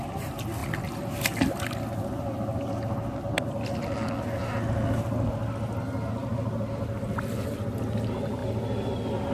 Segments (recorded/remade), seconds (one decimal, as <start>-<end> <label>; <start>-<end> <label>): 0.0-9.3 recorded